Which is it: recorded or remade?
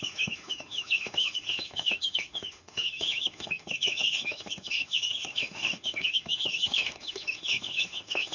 remade